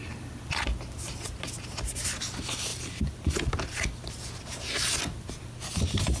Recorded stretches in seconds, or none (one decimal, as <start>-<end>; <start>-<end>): 0.0-6.2